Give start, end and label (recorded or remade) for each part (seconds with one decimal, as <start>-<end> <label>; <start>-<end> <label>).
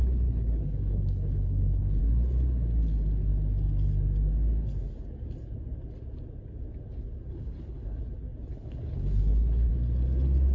0.0-2.0 remade; 2.0-7.3 recorded; 7.3-8.0 remade; 8.0-8.5 recorded; 8.5-9.7 remade; 9.7-10.5 recorded